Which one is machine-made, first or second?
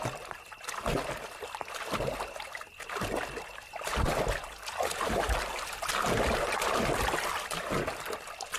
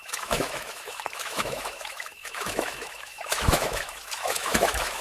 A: second